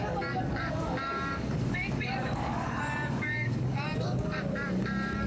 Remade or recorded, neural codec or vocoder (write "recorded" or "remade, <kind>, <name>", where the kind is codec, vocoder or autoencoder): remade, codec, DAC